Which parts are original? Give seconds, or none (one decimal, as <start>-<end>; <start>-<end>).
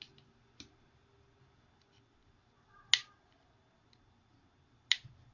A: 0.0-5.3